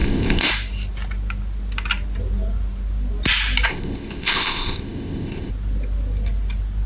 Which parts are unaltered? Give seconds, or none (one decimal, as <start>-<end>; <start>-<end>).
0.5-3.7; 5.5-6.9

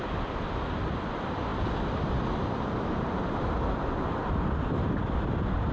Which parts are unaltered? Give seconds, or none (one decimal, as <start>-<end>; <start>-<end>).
0.0-5.7

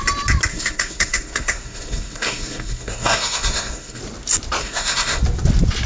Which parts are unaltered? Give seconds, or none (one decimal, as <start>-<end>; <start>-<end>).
0.0-0.5; 4.0-4.6; 5.2-5.9

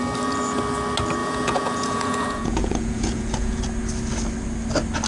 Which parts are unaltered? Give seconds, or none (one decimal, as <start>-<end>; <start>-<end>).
0.0-1.2; 3.6-5.1

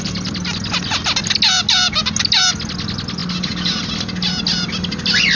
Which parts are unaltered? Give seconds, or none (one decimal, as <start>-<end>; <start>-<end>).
0.0-5.4

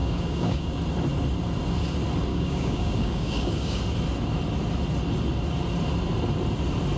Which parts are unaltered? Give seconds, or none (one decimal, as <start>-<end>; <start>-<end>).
0.8-2.3; 3.8-7.0

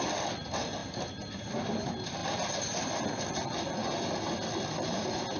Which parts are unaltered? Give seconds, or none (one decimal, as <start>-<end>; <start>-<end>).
2.2-2.7; 3.8-4.6

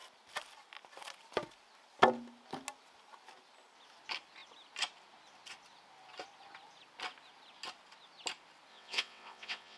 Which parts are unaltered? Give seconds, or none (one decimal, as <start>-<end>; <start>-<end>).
0.0-8.7